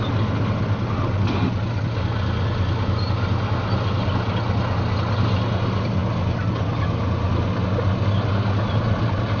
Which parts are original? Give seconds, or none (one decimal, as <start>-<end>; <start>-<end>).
0.0-9.4